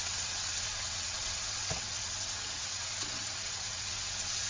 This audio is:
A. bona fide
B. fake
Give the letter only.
B